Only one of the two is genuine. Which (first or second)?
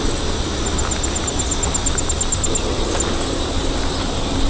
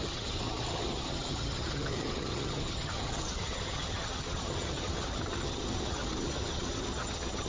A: first